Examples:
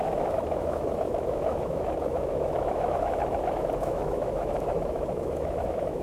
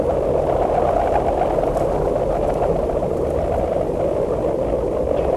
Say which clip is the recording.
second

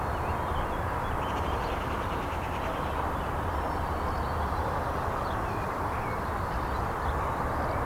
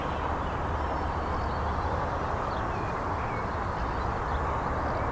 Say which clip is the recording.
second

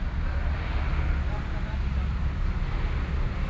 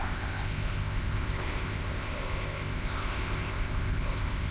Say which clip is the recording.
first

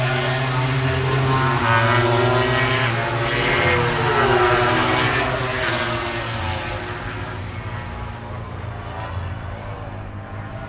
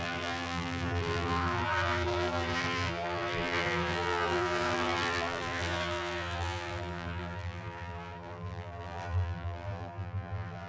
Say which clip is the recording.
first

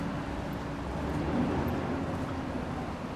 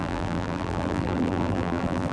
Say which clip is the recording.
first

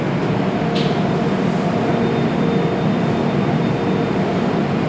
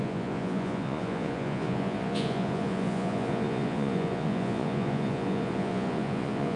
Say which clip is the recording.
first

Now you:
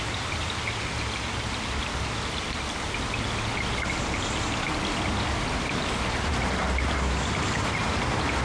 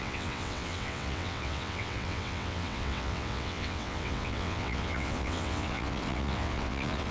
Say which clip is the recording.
first